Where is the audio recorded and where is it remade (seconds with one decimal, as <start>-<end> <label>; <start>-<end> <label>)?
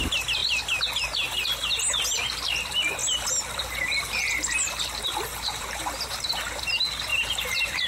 0.0-3.0 recorded; 3.0-4.5 remade; 4.5-5.3 recorded; 5.3-6.6 remade; 6.6-7.1 recorded; 7.1-7.9 remade